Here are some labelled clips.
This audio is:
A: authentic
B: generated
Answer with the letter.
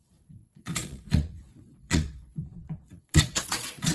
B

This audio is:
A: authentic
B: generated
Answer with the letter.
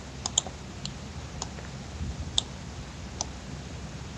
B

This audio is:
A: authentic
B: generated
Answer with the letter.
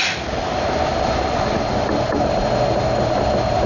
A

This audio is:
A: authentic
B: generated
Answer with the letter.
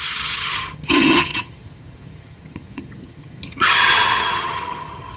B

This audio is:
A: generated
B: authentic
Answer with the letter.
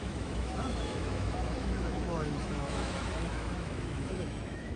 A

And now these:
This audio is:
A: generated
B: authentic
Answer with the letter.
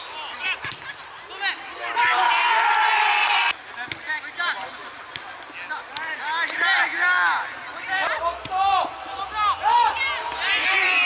B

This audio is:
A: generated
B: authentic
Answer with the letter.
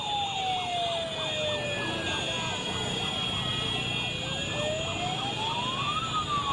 B